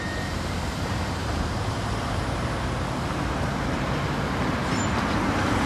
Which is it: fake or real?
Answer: fake